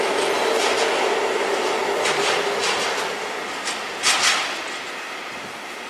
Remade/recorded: recorded